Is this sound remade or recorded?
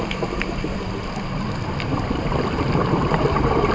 recorded